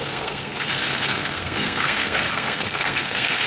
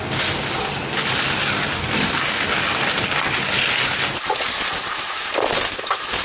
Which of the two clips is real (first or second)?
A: second